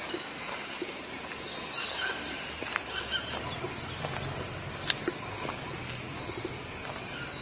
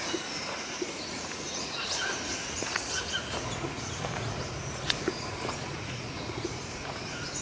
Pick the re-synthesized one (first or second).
second